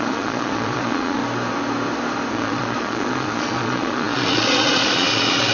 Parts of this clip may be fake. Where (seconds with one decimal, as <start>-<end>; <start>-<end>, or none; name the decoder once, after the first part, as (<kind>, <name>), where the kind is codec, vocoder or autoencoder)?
0.0-1.2 (vocoder, Vocos); 2.3-5.5